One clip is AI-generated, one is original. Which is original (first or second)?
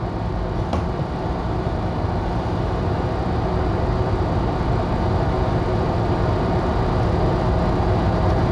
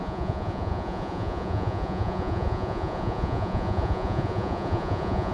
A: first